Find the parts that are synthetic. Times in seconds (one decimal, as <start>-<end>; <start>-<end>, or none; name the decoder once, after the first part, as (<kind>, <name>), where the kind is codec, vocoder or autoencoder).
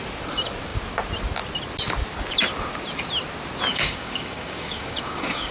3.7-5.5 (codec, DAC)